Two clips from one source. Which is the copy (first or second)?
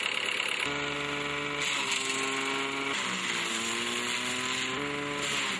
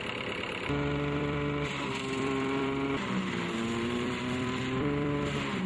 second